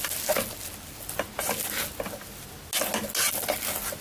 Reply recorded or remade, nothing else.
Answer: recorded